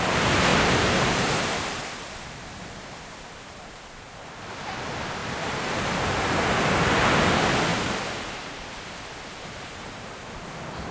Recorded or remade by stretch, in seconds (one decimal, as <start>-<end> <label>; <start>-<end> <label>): 0.0-0.5 recorded; 0.5-4.4 remade; 4.4-5.2 recorded; 5.2-7.1 remade; 7.1-7.7 recorded; 7.7-10.2 remade; 10.2-10.9 recorded